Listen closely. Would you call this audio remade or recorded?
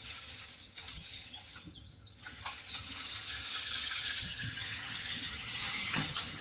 remade